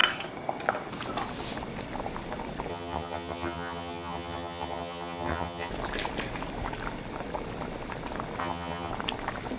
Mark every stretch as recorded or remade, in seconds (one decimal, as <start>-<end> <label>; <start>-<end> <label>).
0.0-2.7 recorded; 2.7-5.7 remade; 5.7-8.4 recorded; 8.4-8.9 remade; 8.9-9.6 recorded